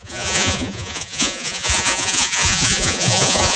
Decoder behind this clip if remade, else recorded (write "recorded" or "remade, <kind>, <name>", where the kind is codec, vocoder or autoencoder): remade, vocoder, Vocos